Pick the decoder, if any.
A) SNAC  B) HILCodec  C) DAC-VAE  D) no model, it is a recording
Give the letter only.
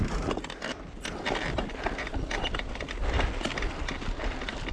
D